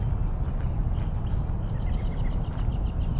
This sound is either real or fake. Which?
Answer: real